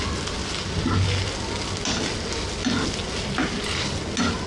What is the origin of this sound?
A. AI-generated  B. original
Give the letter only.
B